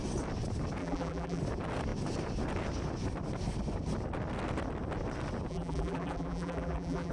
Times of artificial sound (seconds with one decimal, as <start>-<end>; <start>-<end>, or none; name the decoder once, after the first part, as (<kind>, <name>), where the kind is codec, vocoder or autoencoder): 0.8-1.4 (vocoder, BigVGAN v2); 5.5-7.1